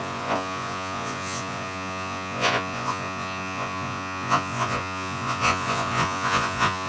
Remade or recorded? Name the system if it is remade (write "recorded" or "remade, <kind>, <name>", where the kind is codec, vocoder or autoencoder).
remade, vocoder, Vocos